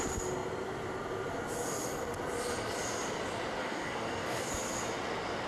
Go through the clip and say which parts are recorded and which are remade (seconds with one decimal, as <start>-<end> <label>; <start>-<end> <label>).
0.0-3.6 recorded; 3.6-4.5 remade; 4.5-5.5 recorded